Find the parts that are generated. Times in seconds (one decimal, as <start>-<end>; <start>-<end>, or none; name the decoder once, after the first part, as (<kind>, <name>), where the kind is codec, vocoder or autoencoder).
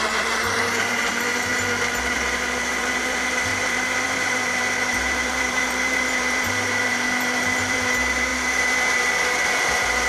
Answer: 0.0-1.5 (vocoder, BigVGAN v2); 2.1-10.1